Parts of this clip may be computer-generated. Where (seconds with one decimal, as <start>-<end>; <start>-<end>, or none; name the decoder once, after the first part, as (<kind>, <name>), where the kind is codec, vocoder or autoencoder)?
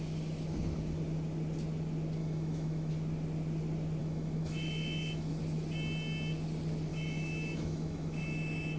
2.2-2.9 (autoencoder, DAC-VAE); 4.0-5.4; 6.9-8.8